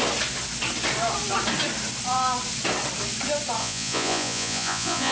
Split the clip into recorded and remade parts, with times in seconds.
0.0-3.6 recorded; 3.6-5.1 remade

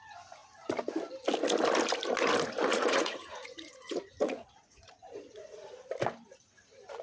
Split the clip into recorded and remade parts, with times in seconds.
0.0-2.7 recorded; 2.7-5.9 remade; 5.9-7.0 recorded

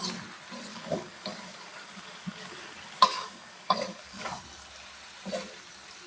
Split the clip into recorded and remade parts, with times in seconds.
0.0-0.7 recorded; 0.7-4.4 remade; 4.4-6.1 recorded

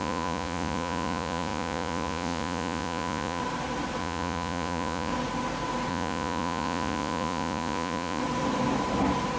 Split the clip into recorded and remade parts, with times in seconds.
0.0-3.4 remade; 3.4-4.0 recorded; 4.0-5.1 remade; 5.1-5.9 recorded; 5.9-8.2 remade; 8.2-9.4 recorded

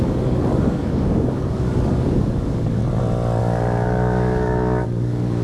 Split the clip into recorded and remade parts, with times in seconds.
0.0-2.8 remade; 2.8-3.4 recorded; 3.4-5.4 remade

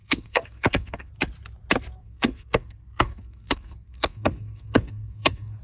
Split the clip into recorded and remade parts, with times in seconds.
0.0-1.1 remade; 1.1-2.0 recorded; 2.0-5.6 remade

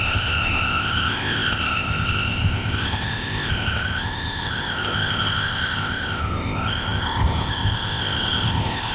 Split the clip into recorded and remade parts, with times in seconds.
0.0-8.9 remade

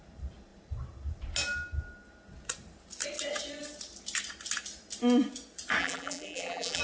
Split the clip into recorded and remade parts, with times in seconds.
0.0-5.8 recorded; 5.8-6.8 remade